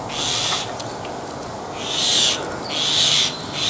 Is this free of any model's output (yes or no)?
yes